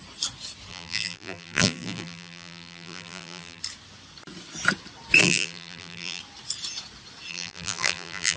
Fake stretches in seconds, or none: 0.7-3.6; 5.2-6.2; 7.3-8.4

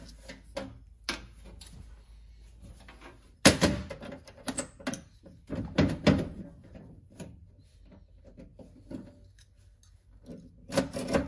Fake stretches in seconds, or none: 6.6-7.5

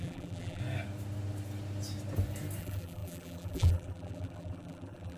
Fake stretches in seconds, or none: 0.0-0.6; 2.6-5.2